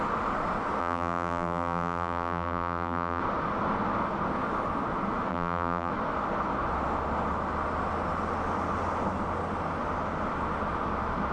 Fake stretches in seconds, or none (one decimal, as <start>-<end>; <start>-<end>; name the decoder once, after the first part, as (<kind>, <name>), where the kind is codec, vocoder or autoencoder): 0.8-3.2 (vocoder, BigVGAN v2); 5.3-5.9